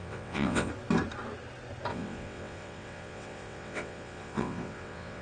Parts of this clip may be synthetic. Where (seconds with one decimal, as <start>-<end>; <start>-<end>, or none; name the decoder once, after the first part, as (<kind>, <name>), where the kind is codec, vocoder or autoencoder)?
0.0-0.7 (vocoder, WaveNeXt); 1.9-5.2